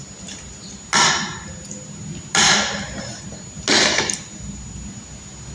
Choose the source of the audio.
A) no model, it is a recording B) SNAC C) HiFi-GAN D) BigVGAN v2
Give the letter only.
A